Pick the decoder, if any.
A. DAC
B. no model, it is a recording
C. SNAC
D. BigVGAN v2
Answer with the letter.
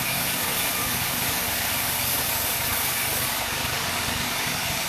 A